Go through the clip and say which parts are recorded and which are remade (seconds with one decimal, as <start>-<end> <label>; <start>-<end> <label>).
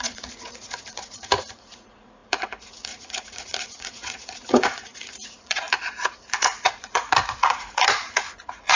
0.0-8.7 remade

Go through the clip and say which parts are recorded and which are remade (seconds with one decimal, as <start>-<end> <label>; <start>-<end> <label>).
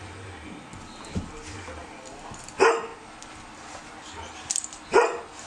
0.0-5.5 recorded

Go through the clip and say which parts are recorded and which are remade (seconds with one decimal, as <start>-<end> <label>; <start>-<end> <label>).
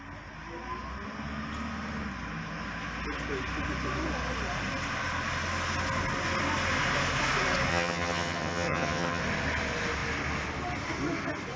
0.0-7.7 recorded; 7.7-9.2 remade; 9.2-11.6 recorded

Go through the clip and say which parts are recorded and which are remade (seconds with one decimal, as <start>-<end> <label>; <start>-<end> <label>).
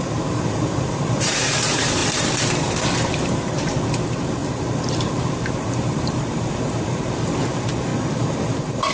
0.0-7.9 remade; 7.9-8.4 recorded; 8.4-8.9 remade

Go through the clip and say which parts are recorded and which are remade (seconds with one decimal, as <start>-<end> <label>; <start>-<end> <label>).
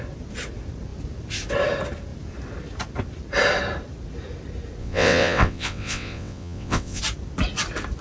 0.0-4.8 recorded; 4.8-7.0 remade; 7.0-8.0 recorded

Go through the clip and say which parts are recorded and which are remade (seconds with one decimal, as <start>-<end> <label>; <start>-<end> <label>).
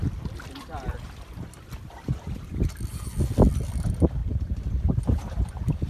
0.0-3.5 remade; 3.5-4.2 recorded; 4.2-4.8 remade; 4.8-5.9 recorded